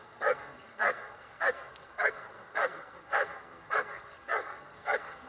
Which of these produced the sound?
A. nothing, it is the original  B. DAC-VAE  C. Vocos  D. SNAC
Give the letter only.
D